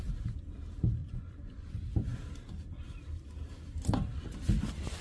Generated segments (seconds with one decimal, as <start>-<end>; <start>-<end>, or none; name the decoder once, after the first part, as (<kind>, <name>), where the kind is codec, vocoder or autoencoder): 1.0-1.7 (vocoder, Vocos)